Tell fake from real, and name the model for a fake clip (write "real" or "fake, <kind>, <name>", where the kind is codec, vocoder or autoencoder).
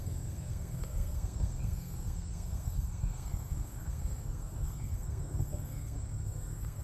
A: fake, codec, SNAC